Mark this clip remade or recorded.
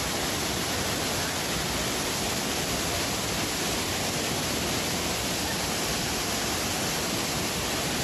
recorded